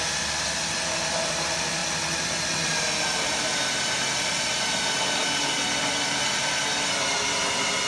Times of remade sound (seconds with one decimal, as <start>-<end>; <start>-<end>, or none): none